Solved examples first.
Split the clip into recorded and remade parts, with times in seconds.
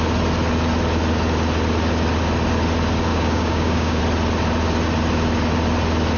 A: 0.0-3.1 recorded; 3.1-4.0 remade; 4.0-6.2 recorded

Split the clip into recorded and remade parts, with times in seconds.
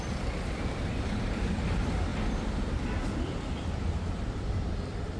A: 0.0-5.2 remade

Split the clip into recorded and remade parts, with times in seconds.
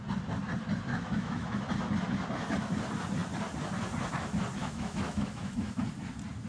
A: 0.0-0.9 recorded; 0.9-1.6 remade; 1.6-4.6 recorded; 4.6-5.8 remade; 5.8-6.5 recorded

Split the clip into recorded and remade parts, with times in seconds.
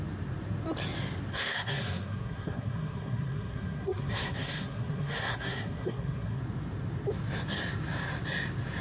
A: 0.0-1.3 recorded; 1.3-6.4 remade; 6.4-8.8 recorded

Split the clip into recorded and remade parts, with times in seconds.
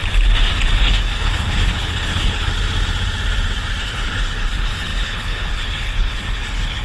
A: 0.0-0.8 recorded; 0.8-2.5 remade; 2.5-3.8 recorded; 3.8-6.8 remade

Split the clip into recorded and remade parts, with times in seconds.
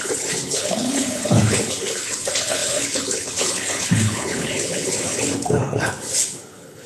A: 0.0-6.9 remade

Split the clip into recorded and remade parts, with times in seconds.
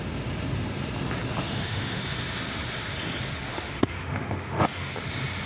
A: 0.0-1.4 recorded; 1.4-2.0 remade; 2.0-3.5 recorded; 3.5-4.9 remade; 4.9-5.5 recorded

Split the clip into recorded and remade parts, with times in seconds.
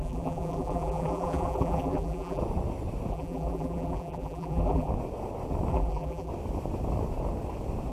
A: 0.0-2.4 remade; 2.4-3.1 recorded; 3.1-4.9 remade; 4.9-5.7 recorded; 5.7-6.3 remade; 6.3-7.9 recorded